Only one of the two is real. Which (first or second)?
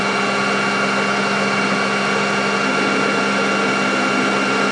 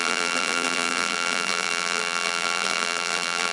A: first